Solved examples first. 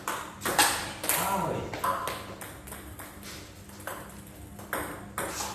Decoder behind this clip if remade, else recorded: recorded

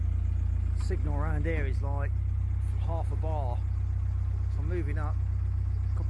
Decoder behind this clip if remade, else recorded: recorded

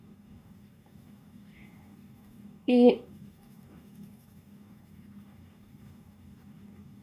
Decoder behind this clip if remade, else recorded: remade, codec, DAC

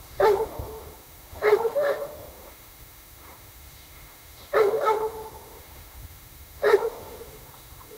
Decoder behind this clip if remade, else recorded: remade, autoencoder, DAC-VAE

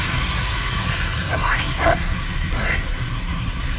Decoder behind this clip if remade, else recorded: remade, codec, SNAC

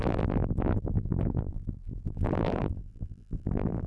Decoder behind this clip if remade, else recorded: remade, vocoder, BigVGAN v2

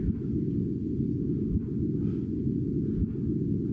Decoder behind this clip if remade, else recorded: recorded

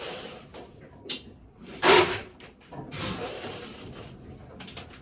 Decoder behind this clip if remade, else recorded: recorded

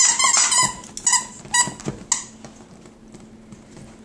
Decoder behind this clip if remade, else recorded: recorded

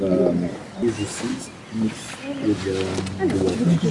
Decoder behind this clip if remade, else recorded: recorded